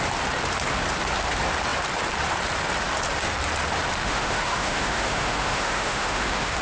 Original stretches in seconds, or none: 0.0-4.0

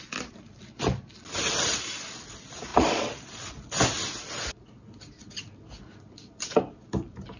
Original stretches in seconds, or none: 0.0-2.7; 3.5-7.4

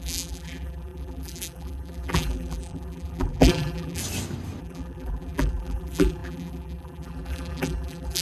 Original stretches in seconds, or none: 4.0-4.6

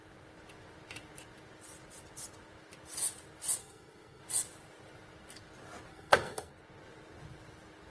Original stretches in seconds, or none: 0.0-3.6; 4.2-5.9; 6.5-7.9

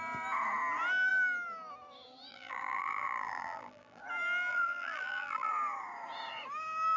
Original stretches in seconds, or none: 0.0-2.3; 4.0-4.5; 5.5-7.0

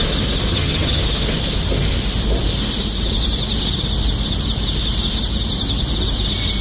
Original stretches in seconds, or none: 0.0-0.5; 1.0-6.6

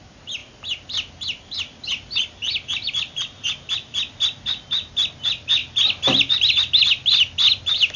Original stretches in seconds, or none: 0.0-8.0